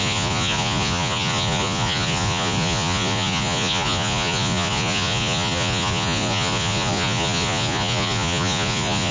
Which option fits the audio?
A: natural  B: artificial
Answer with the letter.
B